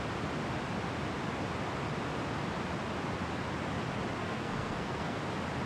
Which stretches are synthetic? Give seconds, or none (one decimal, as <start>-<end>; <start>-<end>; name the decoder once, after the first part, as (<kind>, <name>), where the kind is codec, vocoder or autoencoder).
4.2-5.2 (codec, SNAC)